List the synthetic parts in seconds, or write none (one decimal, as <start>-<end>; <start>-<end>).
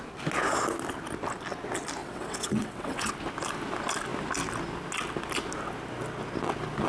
2.0-3.1